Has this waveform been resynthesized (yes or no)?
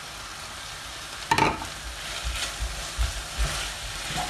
no